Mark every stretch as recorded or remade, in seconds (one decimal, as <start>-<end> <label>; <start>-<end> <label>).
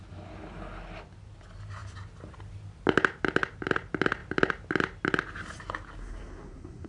0.0-6.0 recorded; 6.0-6.9 remade